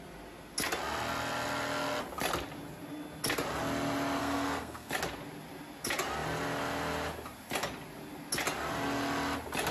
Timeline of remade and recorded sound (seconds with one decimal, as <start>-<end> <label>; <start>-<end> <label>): 0.0-4.2 recorded; 4.2-4.9 remade; 4.9-9.7 recorded